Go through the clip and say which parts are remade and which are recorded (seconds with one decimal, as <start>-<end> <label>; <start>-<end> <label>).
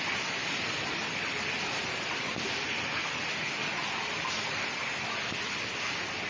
0.0-0.4 recorded; 0.4-1.2 remade; 1.2-1.8 recorded; 1.8-3.4 remade; 3.4-6.3 recorded